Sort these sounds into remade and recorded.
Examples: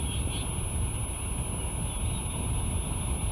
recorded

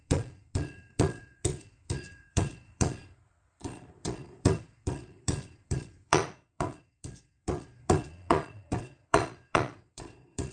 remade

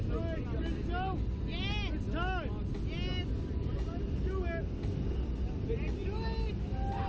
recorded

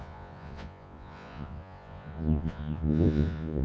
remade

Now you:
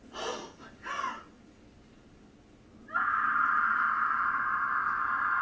recorded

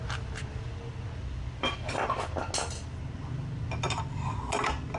recorded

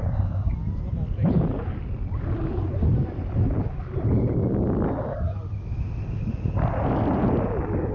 recorded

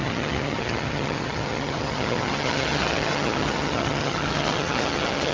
remade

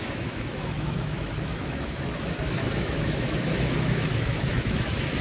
remade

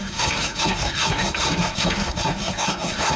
remade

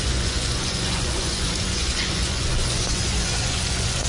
remade